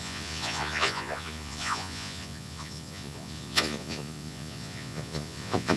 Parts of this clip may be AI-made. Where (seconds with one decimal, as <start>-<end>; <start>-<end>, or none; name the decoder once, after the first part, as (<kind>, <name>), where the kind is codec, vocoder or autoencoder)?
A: 0.0-5.8 (vocoder, Vocos)